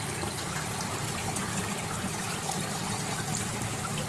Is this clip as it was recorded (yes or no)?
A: yes